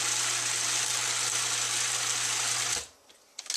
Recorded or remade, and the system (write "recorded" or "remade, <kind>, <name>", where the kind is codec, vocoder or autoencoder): recorded